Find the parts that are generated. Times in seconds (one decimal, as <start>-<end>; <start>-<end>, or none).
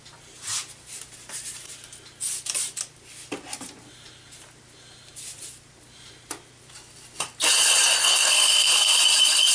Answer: 8.0-8.9